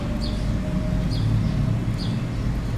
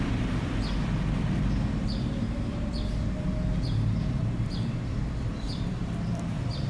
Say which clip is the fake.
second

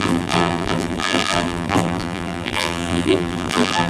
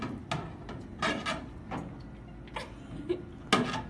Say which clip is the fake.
first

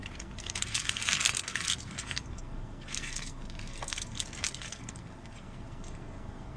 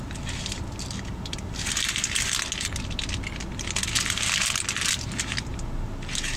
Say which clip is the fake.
first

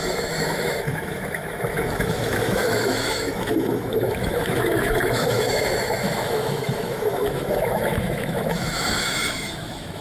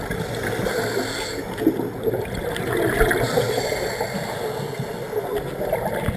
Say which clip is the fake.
first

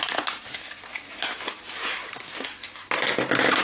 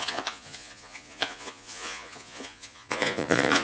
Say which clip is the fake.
second